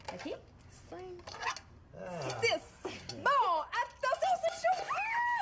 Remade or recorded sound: recorded